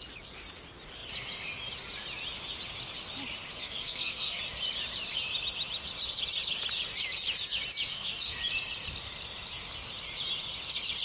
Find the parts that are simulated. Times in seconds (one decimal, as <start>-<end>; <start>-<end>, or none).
3.6-4.4; 7.9-8.4